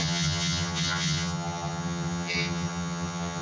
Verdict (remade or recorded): remade